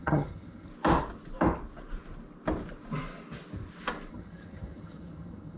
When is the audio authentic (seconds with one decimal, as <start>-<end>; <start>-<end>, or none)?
0.7-4.1